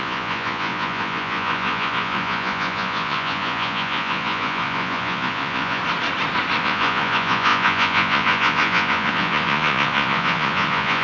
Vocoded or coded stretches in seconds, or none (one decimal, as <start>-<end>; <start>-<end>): 0.0-5.8; 6.6-11.0